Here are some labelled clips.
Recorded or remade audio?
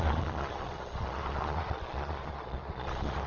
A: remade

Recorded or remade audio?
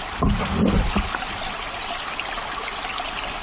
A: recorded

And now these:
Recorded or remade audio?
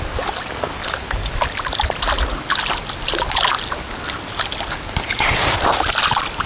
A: recorded